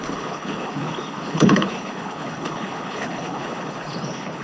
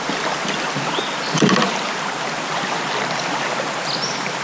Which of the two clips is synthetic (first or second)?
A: first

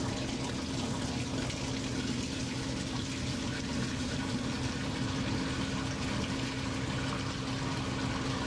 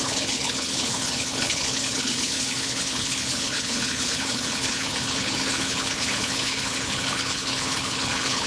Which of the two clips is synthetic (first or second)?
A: second